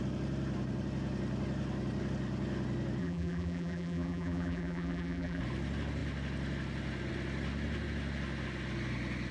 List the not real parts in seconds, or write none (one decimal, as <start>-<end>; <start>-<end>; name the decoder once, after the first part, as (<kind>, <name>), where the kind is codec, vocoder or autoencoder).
3.0-5.4 (vocoder, BigVGAN v2)